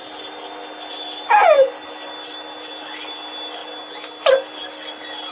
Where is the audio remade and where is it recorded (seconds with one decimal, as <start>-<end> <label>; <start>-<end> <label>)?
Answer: 0.0-5.3 recorded